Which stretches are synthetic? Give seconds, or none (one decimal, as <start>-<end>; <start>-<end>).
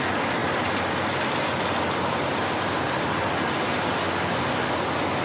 none